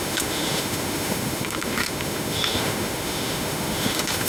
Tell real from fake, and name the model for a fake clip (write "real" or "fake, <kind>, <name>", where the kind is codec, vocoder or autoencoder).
fake, autoencoder, DAC-VAE